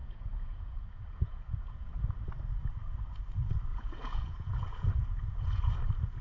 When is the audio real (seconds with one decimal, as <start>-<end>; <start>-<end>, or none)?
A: 1.9-3.7; 5.8-6.2